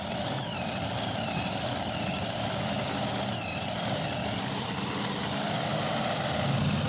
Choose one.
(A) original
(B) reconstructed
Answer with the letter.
A